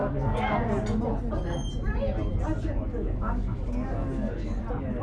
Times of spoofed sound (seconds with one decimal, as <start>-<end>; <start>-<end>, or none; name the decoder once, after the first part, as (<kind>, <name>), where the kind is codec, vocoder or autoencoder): 0.0-0.7 (codec, DAC); 2.9-4.6